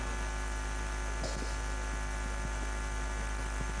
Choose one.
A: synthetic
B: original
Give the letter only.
B